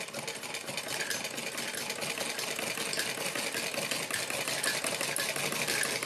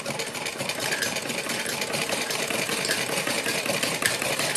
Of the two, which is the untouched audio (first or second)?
first